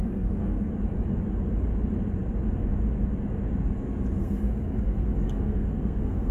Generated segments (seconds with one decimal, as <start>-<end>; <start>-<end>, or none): 0.0-0.7; 4.2-6.3